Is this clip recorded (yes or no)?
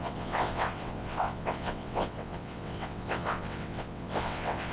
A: no